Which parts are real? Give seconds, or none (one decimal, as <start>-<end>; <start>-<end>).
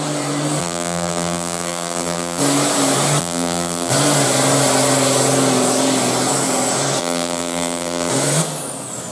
0.0-0.6; 2.4-3.2; 3.9-7.0; 8.1-9.1